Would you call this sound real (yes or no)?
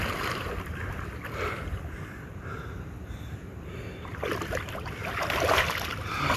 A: yes